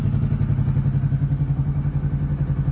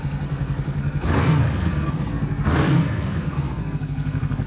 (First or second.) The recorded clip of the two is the first